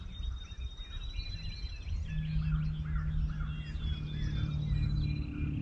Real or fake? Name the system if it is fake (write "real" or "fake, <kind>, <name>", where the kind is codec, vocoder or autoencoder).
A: real